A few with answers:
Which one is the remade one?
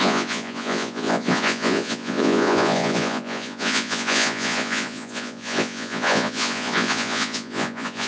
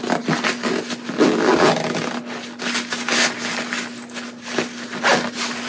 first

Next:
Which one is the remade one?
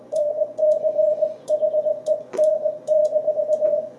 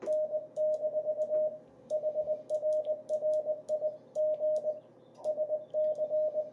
first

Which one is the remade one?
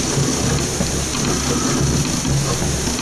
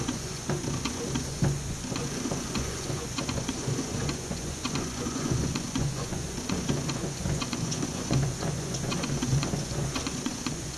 second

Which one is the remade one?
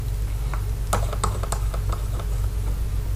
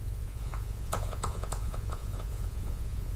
second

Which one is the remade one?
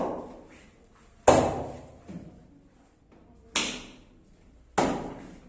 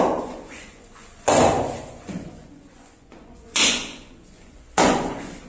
second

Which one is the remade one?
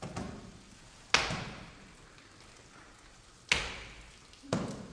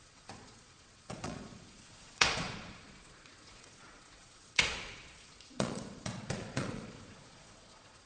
second